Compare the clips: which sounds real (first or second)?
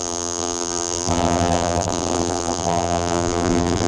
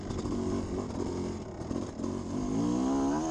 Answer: second